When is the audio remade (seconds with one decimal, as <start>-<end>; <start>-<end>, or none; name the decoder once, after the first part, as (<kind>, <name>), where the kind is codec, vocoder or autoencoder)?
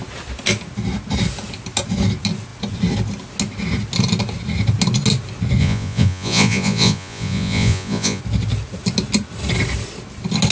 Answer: 5.6-8.2 (vocoder, Vocos)